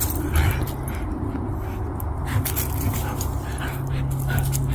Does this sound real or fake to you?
real